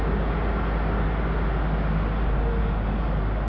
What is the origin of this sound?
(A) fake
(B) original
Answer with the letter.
B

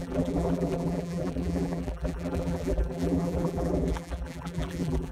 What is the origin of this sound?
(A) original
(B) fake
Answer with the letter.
B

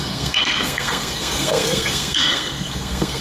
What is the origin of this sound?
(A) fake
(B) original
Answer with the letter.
A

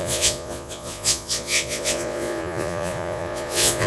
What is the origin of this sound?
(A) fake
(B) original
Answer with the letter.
A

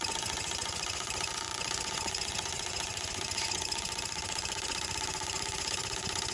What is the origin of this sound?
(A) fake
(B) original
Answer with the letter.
A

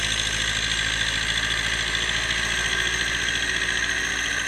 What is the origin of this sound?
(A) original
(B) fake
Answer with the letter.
A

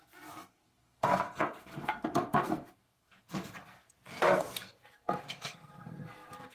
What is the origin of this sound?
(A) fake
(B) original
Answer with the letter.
A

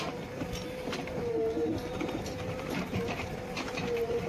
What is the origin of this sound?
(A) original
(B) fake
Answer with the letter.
B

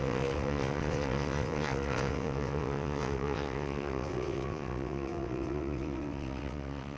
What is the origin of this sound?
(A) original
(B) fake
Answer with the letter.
B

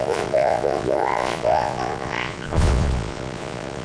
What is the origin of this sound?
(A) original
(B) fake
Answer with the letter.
B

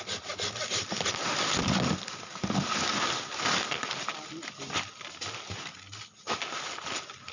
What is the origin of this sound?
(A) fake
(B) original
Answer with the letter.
B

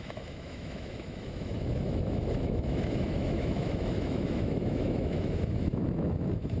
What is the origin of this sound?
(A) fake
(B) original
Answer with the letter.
A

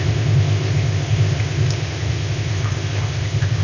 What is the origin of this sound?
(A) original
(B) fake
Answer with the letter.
B